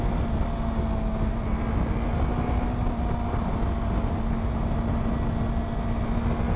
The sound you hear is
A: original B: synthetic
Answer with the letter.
A